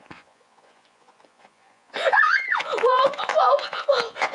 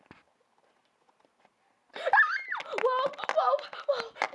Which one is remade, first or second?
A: first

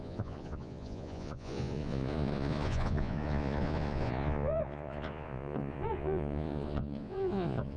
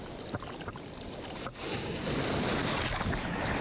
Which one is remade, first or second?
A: first